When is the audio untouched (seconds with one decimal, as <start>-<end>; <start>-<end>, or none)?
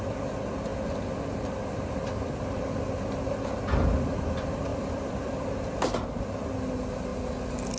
0.0-0.7; 2.6-4.7; 6.2-7.8